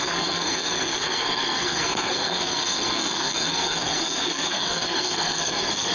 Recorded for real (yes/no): no